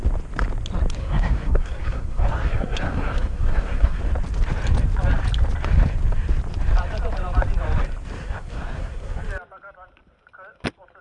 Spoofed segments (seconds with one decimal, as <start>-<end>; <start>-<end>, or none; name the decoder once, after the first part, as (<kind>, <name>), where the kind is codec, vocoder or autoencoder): 1.0-4.0 (codec, SNAC); 8.2-9.2